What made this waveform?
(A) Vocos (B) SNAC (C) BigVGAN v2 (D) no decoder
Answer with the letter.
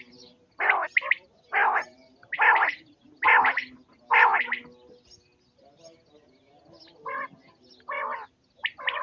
D